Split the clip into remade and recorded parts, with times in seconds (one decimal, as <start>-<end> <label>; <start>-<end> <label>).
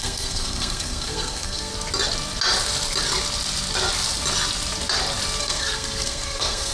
0.0-1.7 remade; 1.7-5.4 recorded; 5.4-6.7 remade